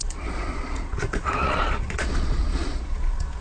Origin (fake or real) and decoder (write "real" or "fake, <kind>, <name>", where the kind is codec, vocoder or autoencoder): fake, vocoder, Vocos